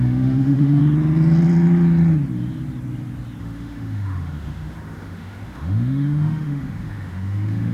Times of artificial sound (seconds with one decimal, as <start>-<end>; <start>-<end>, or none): 0.0-0.8; 3.4-7.7